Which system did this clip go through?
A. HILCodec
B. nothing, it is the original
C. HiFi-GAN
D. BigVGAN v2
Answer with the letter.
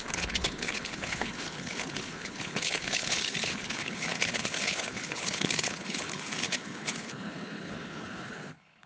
A